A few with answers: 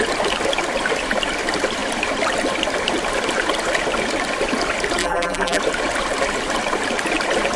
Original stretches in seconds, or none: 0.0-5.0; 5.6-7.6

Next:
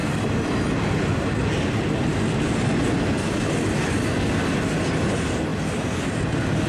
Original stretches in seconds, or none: 0.5-6.7

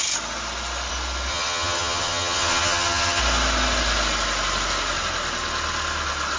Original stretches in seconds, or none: 0.0-1.3; 3.2-6.4

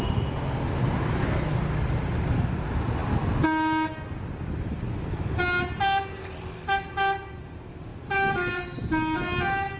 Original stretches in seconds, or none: 0.0-9.8

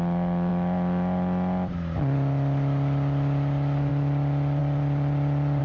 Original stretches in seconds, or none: 0.0-4.6

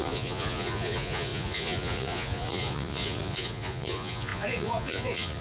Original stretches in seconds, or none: none